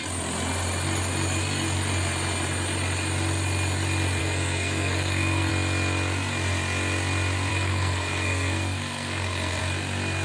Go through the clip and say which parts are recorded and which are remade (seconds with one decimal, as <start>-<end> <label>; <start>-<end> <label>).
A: 0.0-4.2 recorded; 4.2-5.5 remade; 5.5-7.5 recorded; 7.5-9.6 remade; 9.6-10.2 recorded